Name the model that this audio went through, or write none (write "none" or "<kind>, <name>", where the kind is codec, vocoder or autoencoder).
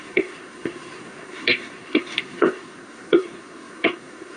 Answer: codec, SNAC